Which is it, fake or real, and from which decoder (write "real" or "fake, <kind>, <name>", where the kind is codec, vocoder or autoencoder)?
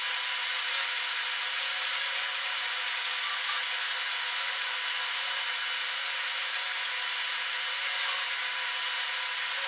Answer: real